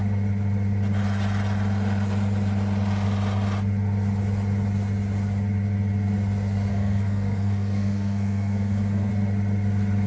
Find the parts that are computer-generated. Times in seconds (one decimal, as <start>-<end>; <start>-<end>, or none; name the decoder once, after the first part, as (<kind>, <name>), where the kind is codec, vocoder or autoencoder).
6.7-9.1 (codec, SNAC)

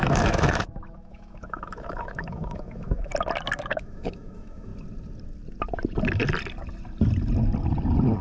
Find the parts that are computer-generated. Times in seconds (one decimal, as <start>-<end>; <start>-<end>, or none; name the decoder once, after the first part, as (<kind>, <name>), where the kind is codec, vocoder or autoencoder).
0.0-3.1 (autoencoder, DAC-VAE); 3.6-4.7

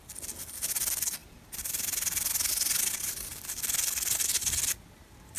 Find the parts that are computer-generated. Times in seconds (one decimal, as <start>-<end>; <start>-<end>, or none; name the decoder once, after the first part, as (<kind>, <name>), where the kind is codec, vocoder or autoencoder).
1.2-2.5 (vocoder, BigVGAN v2); 3.3-4.6

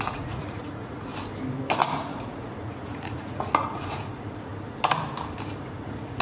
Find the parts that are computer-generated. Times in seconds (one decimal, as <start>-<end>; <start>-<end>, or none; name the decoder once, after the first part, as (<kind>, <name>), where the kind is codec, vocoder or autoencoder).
0.0-1.1 (vocoder, Vocos); 1.8-4.5; 5.6-6.2

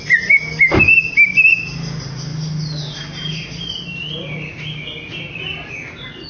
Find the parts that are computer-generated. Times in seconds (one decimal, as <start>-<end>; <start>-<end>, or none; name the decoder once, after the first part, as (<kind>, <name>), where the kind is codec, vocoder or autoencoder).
none

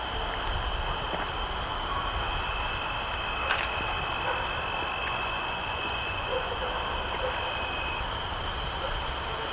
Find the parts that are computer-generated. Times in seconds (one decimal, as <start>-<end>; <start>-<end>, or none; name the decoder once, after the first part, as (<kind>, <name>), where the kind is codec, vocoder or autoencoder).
5.0-6.6 (vocoder, Vocos)

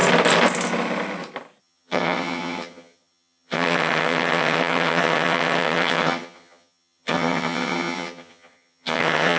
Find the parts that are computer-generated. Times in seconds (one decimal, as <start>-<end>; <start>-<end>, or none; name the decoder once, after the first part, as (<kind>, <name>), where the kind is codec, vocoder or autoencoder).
1.6-9.4 (vocoder, HiFi-GAN)